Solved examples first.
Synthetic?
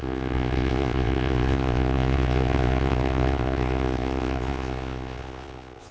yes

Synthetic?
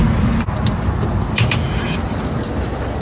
no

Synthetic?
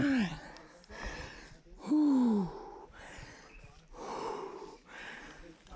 no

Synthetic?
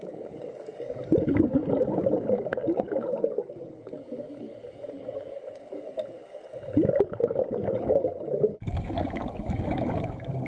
yes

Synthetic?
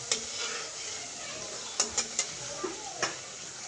no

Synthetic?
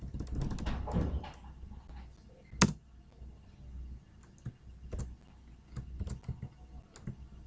no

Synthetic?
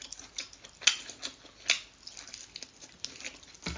no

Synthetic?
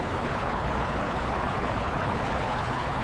yes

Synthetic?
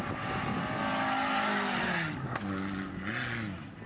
no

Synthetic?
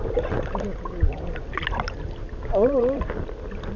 no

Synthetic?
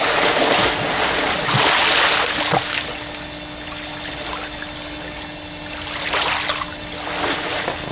no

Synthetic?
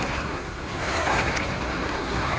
yes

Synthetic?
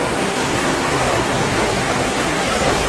yes